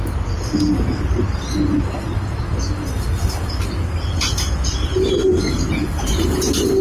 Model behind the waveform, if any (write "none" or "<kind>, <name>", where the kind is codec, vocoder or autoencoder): none